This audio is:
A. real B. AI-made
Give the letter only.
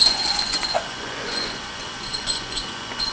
B